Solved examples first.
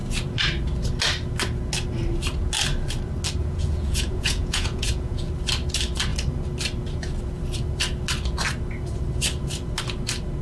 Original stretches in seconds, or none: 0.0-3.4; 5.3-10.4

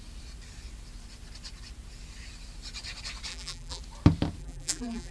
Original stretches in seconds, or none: 0.0-3.3; 3.8-4.4

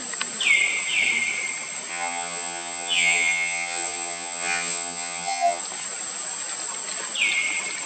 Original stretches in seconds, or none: 0.0-1.9; 5.6-7.9

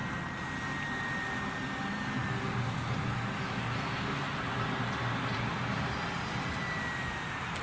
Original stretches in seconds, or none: 0.0-7.6

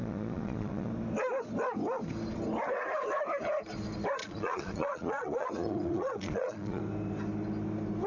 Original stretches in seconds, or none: 0.9-4.2; 6.8-8.1

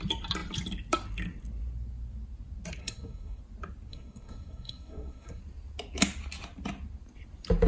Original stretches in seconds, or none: 0.0-2.8; 3.4-3.9; 5.4-7.7